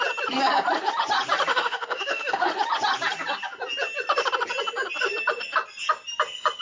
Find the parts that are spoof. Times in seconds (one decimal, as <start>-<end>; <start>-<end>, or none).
1.5-2.5

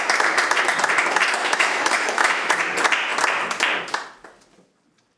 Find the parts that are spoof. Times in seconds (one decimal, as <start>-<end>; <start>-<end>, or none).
1.4-2.5

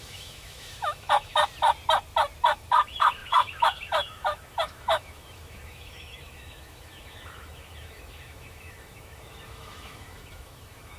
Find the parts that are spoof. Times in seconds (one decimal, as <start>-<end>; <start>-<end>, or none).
0.0-1.4; 2.5-11.0

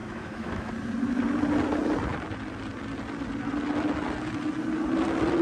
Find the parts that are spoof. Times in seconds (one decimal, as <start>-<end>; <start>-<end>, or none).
0.0-0.7

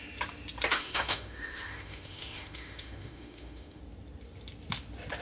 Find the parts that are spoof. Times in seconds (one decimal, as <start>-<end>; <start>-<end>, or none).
0.7-3.8